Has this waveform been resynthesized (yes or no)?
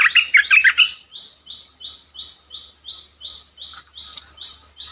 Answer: no